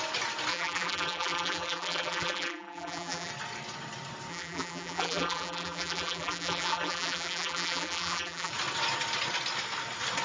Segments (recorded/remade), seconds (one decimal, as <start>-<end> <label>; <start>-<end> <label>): 0.0-0.5 recorded; 0.5-3.3 remade; 3.3-4.3 recorded; 4.3-8.5 remade; 8.5-10.2 recorded